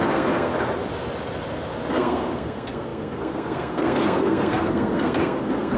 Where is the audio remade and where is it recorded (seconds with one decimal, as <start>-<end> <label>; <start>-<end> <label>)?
0.0-0.5 remade; 0.5-1.9 recorded; 1.9-5.8 remade